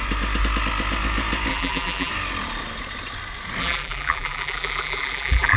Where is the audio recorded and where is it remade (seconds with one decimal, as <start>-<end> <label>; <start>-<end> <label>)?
0.0-1.5 recorded; 1.5-2.1 remade; 2.1-3.6 recorded; 3.6-5.6 remade